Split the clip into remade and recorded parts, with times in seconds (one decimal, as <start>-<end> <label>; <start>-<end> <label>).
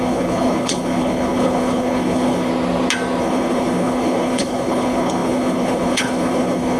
0.0-2.5 remade; 2.5-3.2 recorded; 3.2-6.8 remade